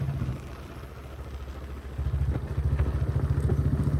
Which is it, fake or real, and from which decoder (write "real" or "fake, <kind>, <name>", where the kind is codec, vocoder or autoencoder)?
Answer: real